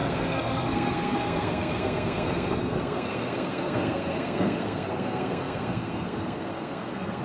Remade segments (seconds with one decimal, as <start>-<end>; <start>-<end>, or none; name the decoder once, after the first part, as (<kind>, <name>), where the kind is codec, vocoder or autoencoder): 0.0-7.2 (codec, SNAC)